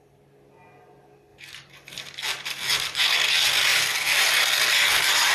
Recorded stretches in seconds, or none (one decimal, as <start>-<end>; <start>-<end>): 0.0-3.7